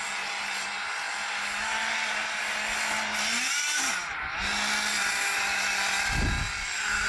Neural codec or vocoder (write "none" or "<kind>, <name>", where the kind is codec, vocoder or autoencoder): none